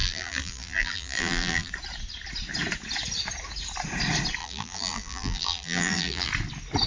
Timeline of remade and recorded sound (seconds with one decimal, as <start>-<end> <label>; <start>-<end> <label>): 0.0-1.7 remade; 1.7-4.4 recorded; 4.4-6.3 remade; 6.3-6.9 recorded

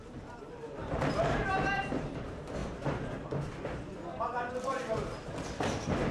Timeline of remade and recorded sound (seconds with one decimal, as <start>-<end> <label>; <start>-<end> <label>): 0.0-2.6 remade; 2.6-4.5 recorded; 4.5-6.1 remade

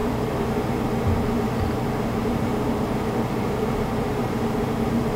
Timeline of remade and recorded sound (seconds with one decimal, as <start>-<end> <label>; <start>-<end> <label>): 0.0-1.6 remade; 1.6-2.2 recorded; 2.2-5.2 remade

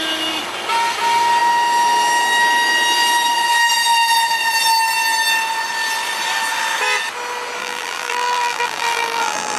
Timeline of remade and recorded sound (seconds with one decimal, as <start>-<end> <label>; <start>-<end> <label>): 0.0-7.6 recorded; 7.6-9.6 remade

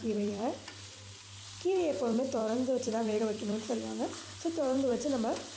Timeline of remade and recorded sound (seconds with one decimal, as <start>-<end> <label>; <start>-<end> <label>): 0.0-4.9 remade; 4.9-5.6 recorded